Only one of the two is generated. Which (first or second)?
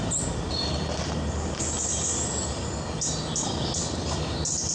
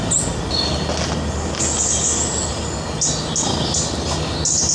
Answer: first